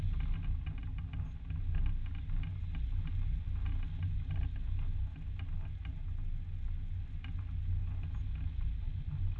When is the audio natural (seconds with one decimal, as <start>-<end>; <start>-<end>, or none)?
0.0-9.4